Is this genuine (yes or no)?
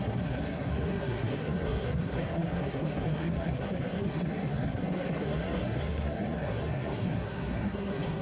no